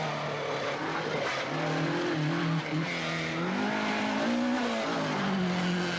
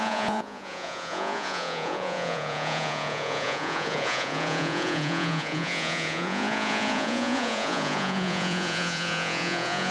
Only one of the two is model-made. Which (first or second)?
second